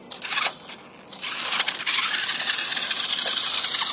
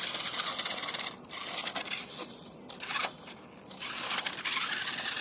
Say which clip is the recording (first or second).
first